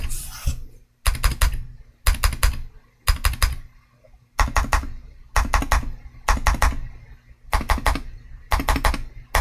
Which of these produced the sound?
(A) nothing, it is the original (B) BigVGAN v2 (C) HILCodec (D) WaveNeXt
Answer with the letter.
A